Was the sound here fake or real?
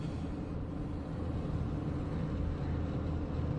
real